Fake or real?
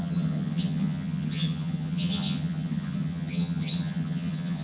fake